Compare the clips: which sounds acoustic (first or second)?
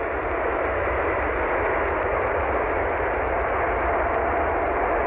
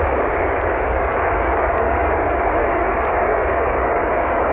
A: first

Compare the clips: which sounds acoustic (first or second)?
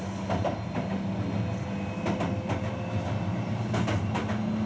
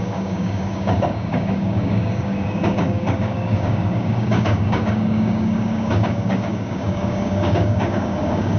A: first